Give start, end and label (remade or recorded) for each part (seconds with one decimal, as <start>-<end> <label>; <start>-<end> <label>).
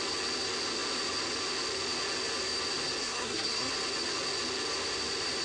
0.0-3.0 recorded; 3.0-3.7 remade; 3.7-5.4 recorded